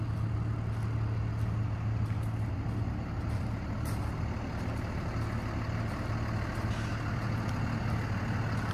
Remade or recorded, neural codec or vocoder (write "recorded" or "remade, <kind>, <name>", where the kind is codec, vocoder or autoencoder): recorded